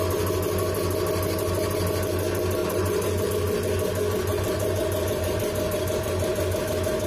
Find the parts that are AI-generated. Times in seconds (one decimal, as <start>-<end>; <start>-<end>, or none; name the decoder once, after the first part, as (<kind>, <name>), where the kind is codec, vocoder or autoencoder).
2.6-3.3 (vocoder, BigVGAN v2); 4.3-5.4